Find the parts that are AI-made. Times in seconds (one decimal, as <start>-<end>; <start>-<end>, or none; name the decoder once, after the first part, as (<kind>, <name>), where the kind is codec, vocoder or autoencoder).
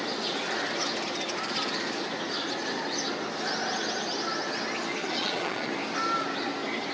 5.0-5.7 (vocoder, Vocos)